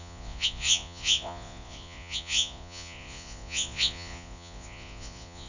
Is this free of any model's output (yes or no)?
no